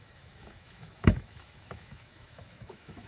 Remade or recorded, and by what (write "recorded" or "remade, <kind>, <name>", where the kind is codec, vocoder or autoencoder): remade, autoencoder, DAC-VAE